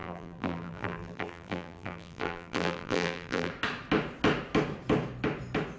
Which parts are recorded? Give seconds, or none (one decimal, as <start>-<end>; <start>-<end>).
3.5-5.8